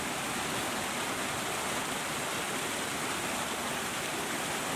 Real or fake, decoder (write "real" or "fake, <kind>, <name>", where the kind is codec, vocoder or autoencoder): real